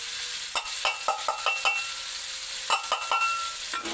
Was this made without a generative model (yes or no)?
yes